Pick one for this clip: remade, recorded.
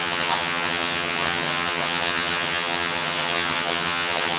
remade